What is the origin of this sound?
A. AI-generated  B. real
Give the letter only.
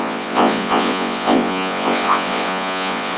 A